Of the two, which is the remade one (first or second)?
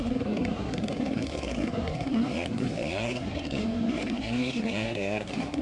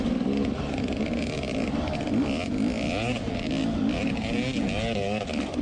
first